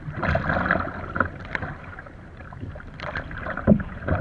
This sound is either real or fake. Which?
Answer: fake